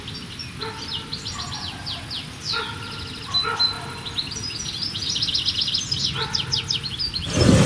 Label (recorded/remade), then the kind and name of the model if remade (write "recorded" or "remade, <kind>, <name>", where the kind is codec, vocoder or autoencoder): recorded